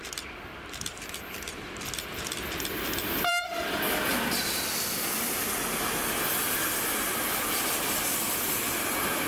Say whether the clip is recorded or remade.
remade